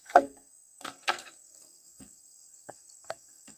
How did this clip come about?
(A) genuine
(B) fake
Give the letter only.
B